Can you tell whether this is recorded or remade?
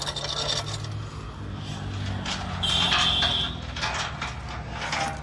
recorded